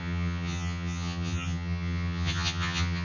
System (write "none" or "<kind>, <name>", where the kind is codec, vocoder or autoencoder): vocoder, HiFi-GAN